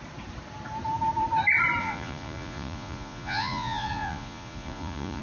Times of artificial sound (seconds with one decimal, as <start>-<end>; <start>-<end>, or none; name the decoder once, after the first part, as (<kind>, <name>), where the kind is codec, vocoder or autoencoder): 1.8-5.2 (vocoder, Vocos)